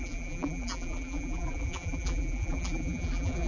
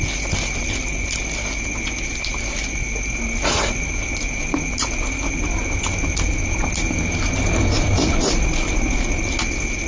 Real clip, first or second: second